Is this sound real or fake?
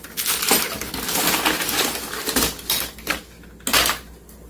real